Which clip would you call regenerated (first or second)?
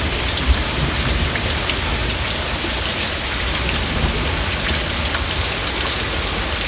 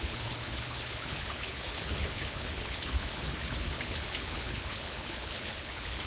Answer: second